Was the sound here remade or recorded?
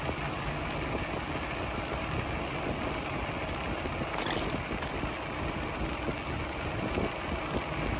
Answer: recorded